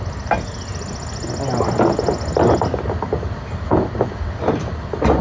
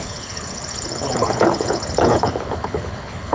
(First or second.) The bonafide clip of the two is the first